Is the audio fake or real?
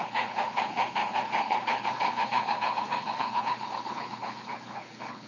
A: fake